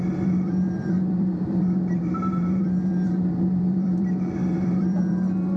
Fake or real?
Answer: fake